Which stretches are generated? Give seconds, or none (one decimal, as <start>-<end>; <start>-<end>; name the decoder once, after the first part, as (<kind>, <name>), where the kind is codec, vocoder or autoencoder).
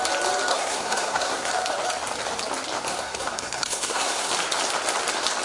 0.5-1.5 (codec, SNAC); 2.9-4.3